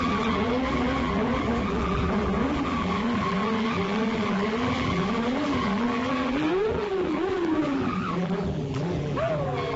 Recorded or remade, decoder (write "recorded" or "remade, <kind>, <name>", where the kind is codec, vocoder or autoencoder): remade, vocoder, BigVGAN v2